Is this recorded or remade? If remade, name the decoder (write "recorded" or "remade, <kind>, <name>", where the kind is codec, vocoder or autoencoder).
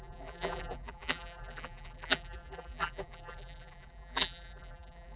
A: remade, vocoder, BigVGAN v2